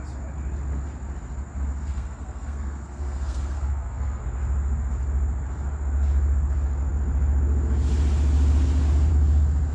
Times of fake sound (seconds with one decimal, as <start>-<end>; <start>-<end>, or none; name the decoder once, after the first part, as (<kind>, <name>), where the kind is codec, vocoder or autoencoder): 1.9-4.2 (codec, SNAC)